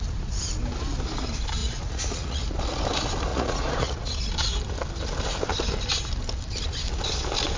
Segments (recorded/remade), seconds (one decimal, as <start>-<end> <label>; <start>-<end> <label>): 0.0-1.6 recorded; 1.6-2.4 remade; 2.4-3.3 recorded; 3.3-4.1 remade; 4.1-7.6 recorded